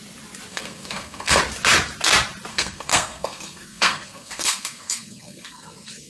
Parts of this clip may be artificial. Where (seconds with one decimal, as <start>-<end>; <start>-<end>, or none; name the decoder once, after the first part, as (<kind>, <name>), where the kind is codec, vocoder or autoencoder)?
0.5-1.4 (codec, SNAC); 2.5-6.1

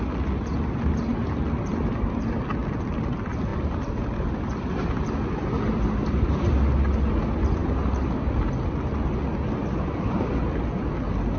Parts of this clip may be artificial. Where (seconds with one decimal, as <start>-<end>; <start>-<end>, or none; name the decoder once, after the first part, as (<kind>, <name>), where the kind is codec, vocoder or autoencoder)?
none

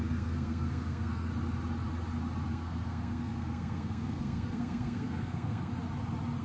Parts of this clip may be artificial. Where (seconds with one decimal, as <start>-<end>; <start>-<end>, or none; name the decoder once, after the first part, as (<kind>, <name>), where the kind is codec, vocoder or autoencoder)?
0.0-1.3 (codec, SNAC); 2.5-5.7

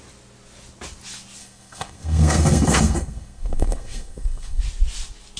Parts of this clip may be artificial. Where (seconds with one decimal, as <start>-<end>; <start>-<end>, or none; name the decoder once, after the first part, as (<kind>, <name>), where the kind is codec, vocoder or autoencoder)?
1.4-4.6 (codec, SNAC)

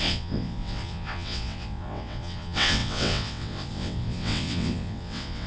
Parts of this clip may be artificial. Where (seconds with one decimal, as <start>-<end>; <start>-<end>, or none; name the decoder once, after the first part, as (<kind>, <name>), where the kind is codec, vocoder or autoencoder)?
0.0-5.5 (vocoder, WaveNeXt)